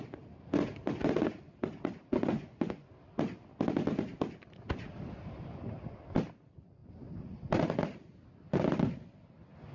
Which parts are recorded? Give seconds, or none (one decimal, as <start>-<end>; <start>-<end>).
0.0-2.3; 2.9-9.7